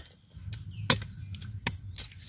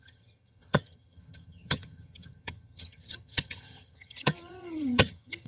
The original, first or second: first